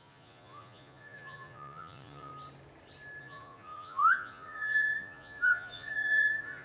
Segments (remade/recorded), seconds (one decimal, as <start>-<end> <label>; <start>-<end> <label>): 0.0-2.3 remade; 2.3-3.2 recorded; 3.2-6.6 remade